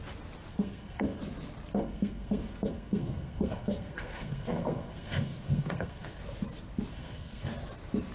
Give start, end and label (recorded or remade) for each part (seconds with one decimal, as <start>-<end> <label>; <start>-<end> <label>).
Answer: 0.0-0.5 recorded; 0.5-1.2 remade; 1.2-1.7 recorded; 1.7-6.2 remade; 6.2-6.9 recorded; 6.9-7.5 remade; 7.5-8.1 recorded

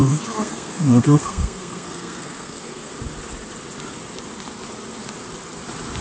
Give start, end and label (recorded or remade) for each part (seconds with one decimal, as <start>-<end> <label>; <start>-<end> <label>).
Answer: 0.0-2.9 remade; 2.9-6.0 recorded

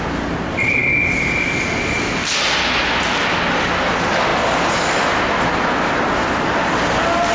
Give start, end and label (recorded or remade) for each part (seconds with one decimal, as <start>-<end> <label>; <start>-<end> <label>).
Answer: 0.0-7.3 recorded

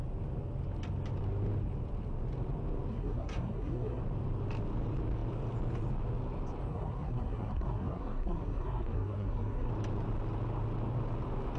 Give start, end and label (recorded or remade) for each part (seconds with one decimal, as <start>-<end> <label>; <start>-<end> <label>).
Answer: 0.0-2.9 recorded; 2.9-4.0 remade; 4.0-6.7 recorded; 6.7-9.7 remade; 9.7-11.6 recorded